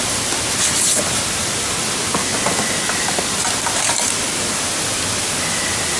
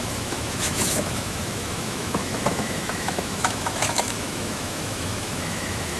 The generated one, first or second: second